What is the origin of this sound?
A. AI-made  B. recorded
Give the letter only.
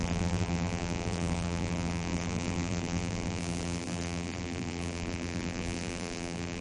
A